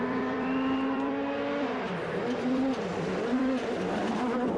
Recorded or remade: remade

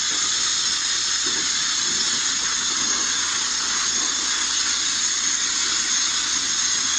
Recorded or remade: recorded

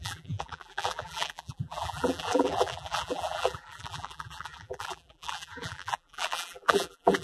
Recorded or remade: remade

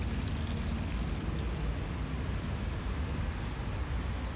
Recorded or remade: recorded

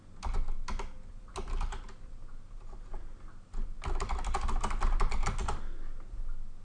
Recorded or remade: recorded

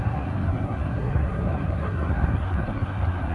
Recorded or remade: remade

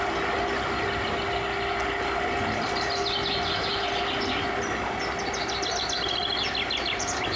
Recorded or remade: recorded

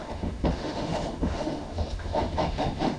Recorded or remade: remade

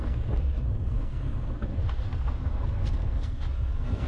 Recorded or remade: remade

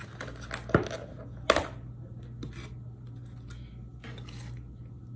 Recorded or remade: recorded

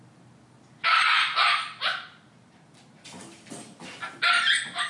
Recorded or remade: remade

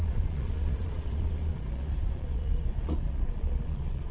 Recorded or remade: remade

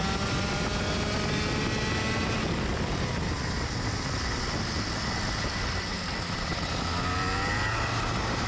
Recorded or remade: recorded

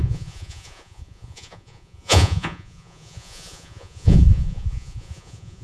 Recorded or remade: remade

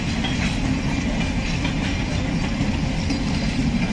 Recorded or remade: recorded